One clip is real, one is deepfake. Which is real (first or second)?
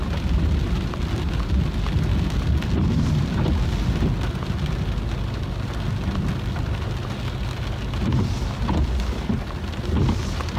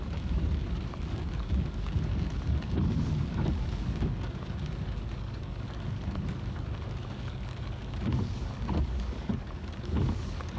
first